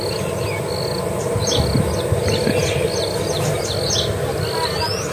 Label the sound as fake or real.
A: real